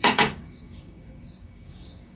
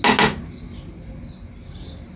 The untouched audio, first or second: second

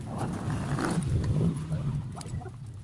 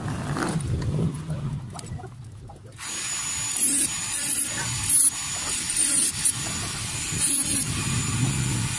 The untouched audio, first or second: second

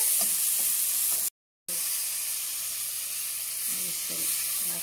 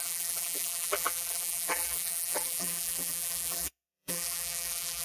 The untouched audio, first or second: first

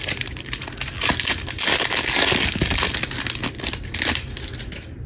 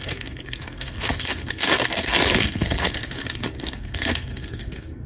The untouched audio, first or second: first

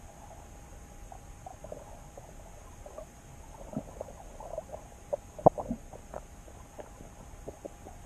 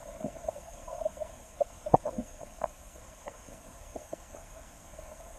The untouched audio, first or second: first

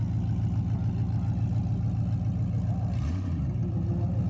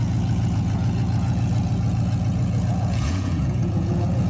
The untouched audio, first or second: first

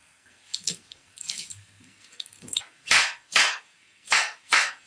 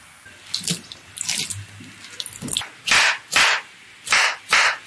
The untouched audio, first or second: second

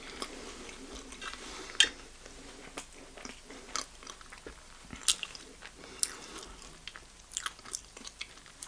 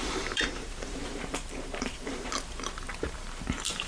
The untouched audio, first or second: first